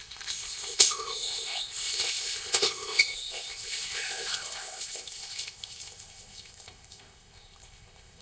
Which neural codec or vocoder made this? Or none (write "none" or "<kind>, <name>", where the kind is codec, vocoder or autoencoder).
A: codec, ZipCodec